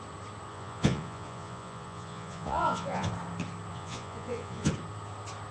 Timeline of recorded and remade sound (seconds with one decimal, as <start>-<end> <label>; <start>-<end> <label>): 0.0-0.5 recorded; 0.5-3.1 remade; 3.1-3.7 recorded; 3.7-4.7 remade; 4.7-5.5 recorded